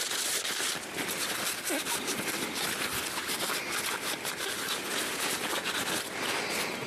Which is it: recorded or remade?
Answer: recorded